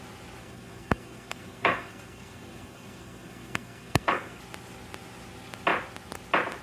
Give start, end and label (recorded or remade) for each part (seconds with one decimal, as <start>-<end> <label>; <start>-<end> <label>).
0.0-0.4 recorded; 0.4-4.4 remade; 4.4-6.6 recorded